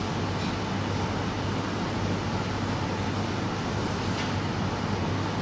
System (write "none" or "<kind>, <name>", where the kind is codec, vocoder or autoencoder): none